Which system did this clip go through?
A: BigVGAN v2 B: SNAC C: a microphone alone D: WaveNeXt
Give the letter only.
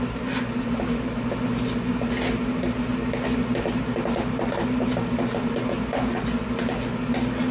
C